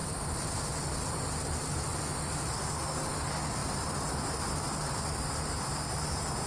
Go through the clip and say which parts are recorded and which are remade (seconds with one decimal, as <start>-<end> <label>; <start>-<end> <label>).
0.0-1.2 remade; 1.2-6.5 recorded

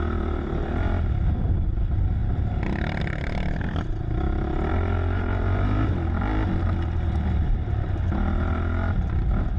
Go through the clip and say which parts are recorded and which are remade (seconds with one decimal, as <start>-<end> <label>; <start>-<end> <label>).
0.0-4.7 recorded; 4.7-5.2 remade; 5.2-9.6 recorded

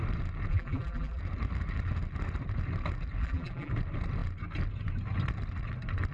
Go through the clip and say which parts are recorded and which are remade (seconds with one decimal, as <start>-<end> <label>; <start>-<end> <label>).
0.0-0.5 recorded; 0.5-1.2 remade; 1.2-3.2 recorded; 3.2-3.7 remade; 3.7-6.1 recorded

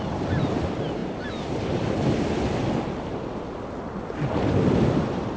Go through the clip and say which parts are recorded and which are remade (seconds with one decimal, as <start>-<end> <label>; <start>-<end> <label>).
0.0-5.4 recorded

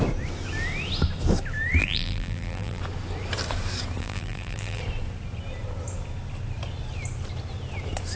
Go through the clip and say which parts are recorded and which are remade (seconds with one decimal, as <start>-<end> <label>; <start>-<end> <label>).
0.0-1.8 recorded; 1.8-2.8 remade; 2.8-4.0 recorded; 4.0-4.8 remade; 4.8-8.2 recorded

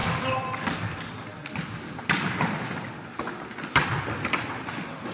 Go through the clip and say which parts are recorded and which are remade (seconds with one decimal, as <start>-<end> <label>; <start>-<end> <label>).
0.0-0.5 remade; 0.5-5.1 recorded

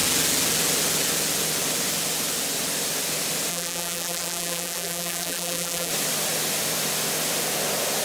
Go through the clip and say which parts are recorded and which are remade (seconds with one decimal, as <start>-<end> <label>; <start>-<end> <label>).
0.0-3.5 recorded; 3.5-5.9 remade; 5.9-8.0 recorded